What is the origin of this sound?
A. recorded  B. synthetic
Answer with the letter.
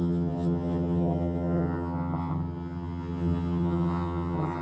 B